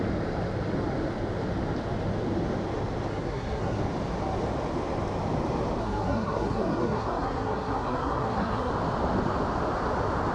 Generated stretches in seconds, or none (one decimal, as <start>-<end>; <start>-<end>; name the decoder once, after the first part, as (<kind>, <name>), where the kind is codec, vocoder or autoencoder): 3.1-3.8 (codec, SNAC); 5.8-8.7